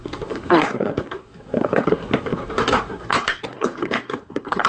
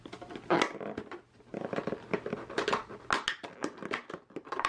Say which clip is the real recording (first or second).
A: second